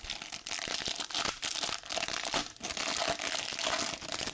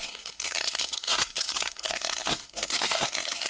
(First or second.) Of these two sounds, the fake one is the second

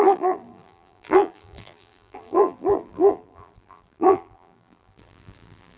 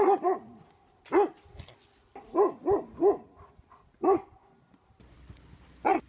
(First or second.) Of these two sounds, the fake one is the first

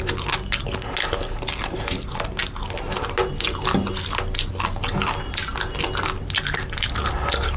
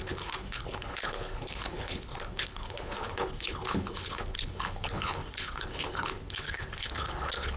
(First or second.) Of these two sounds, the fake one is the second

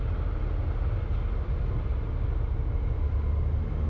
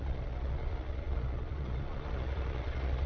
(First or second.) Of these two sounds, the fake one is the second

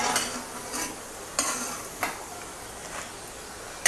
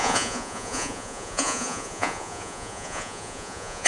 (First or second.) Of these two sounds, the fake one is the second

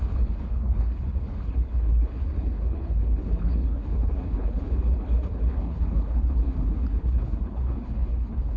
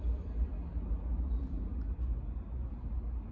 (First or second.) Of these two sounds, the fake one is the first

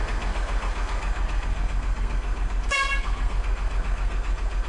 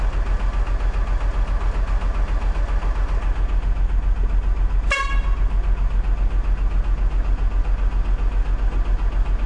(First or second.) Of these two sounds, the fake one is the first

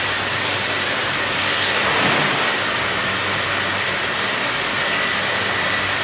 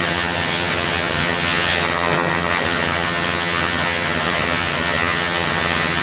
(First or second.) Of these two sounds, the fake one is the second